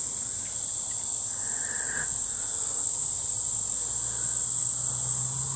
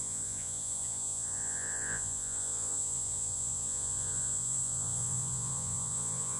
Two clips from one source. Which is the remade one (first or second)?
second